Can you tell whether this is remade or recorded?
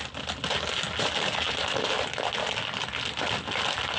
recorded